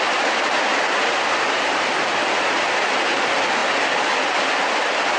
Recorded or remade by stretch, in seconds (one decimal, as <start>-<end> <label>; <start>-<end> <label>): 0.0-5.2 recorded